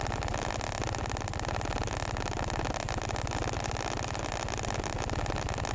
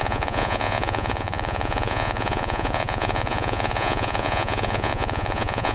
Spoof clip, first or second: second